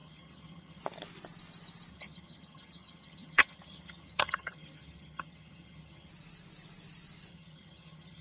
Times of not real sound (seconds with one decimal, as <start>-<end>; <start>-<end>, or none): 0.0-0.8; 1.9-6.1; 7.3-8.2